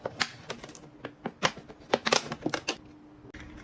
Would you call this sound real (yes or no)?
yes